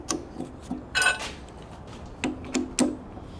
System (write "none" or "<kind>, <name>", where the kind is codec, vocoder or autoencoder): none